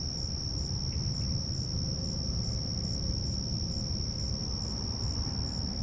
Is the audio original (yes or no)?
yes